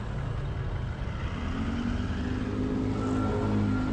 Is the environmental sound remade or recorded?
recorded